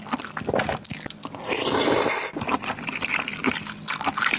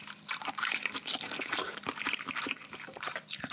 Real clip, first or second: first